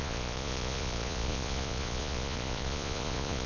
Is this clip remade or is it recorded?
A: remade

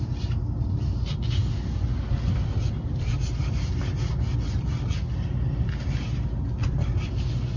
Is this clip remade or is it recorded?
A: recorded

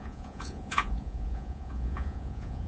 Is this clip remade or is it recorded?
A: remade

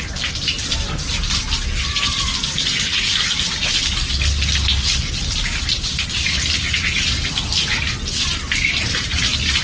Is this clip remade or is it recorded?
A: recorded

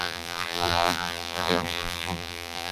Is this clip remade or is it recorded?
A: remade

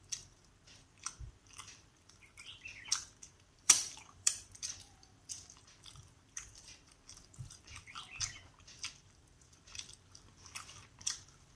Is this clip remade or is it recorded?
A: remade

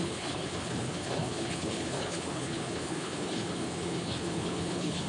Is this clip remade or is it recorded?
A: remade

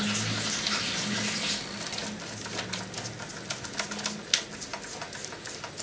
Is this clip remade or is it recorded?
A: recorded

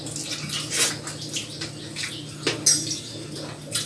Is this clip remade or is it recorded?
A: recorded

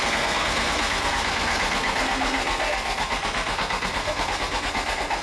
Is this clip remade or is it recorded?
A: remade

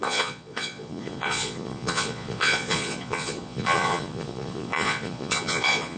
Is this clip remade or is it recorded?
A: remade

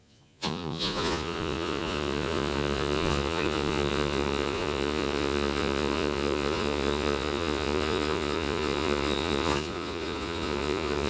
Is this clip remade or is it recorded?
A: remade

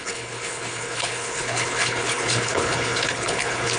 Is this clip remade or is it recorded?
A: remade